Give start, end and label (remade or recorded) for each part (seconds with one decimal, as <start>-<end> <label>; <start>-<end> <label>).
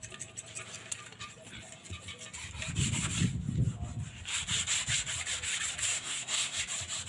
0.0-5.9 recorded; 5.9-6.6 remade; 6.6-7.1 recorded